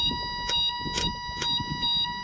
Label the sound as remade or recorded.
recorded